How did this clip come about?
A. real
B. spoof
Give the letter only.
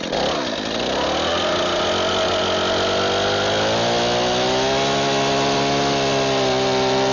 A